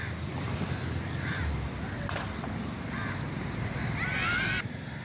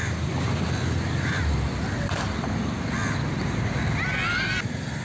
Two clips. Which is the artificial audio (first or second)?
first